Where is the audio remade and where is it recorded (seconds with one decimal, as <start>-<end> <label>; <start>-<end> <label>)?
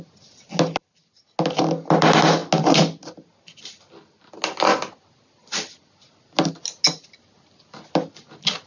0.0-8.7 recorded